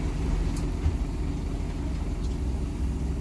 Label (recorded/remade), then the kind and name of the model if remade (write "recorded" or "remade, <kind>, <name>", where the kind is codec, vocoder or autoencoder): recorded